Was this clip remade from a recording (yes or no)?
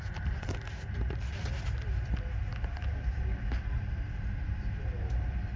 no